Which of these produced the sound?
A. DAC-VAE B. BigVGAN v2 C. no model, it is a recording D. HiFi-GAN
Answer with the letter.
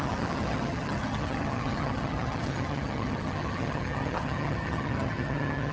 D